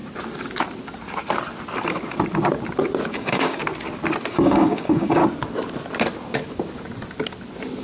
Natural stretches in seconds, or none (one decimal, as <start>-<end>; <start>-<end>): 0.0-3.1; 3.6-4.3; 5.2-7.8